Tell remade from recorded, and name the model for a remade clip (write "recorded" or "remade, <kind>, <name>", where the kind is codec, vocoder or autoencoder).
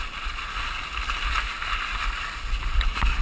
recorded